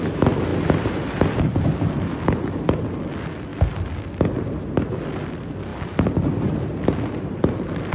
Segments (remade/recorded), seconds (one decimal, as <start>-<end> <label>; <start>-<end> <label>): 0.0-0.5 recorded; 0.5-1.4 remade; 1.4-5.7 recorded; 5.7-6.6 remade; 6.6-7.9 recorded